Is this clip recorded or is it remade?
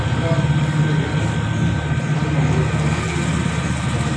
recorded